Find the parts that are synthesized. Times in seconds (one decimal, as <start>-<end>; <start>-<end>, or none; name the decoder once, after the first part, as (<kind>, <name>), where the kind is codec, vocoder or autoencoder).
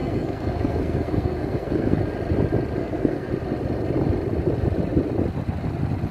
0.0-2.0 (codec, SNAC); 2.8-3.3